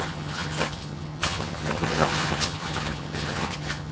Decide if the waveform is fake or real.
fake